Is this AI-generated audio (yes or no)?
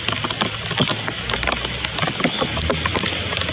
no